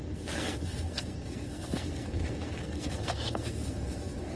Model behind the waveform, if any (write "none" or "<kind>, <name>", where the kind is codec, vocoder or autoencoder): codec, SNAC